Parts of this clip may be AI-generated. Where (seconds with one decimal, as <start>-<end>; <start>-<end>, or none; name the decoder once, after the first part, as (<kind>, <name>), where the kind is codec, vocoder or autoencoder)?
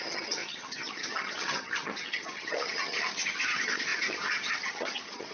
0.0-5.3 (vocoder, HiFi-GAN)